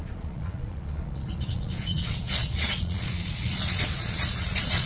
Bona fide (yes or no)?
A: no